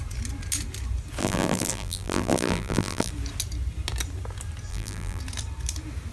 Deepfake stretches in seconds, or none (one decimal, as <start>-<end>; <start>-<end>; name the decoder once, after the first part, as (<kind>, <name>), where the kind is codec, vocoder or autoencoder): 1.2-3.1 (vocoder, BigVGAN v2); 4.7-5.2